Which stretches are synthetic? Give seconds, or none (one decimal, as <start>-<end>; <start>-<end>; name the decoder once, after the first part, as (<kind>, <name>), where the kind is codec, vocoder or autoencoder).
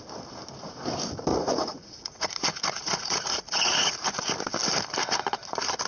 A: 1.3-3.9 (vocoder, Vocos)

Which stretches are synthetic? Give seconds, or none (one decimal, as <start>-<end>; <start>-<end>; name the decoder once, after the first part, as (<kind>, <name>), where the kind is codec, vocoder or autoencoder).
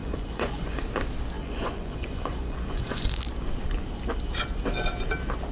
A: 0.0-0.8 (vocoder, Vocos); 1.4-3.1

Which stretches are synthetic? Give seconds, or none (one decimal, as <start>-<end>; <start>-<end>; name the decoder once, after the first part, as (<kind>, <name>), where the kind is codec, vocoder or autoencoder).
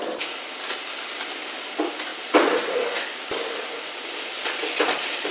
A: none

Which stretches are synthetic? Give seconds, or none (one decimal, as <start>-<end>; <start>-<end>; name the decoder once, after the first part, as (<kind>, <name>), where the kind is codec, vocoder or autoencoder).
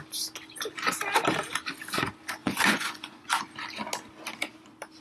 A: 2.4-3.4 (vocoder, Vocos)